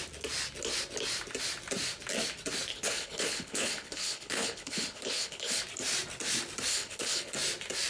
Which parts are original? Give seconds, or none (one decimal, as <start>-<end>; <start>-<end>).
0.0-2.7; 5.6-6.7; 7.3-7.9